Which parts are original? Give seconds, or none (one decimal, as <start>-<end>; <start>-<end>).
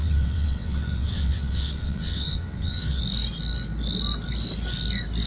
3.0-5.3